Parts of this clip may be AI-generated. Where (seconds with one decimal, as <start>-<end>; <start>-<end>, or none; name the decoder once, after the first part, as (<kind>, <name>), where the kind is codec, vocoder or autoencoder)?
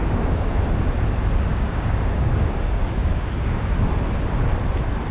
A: 0.0-0.5 (codec, DAC); 1.5-3.7